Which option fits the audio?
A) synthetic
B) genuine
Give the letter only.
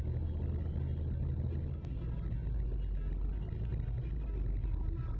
B